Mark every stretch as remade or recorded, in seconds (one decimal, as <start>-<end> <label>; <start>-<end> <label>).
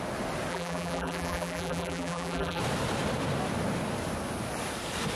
0.0-0.5 recorded; 0.5-2.6 remade; 2.6-5.2 recorded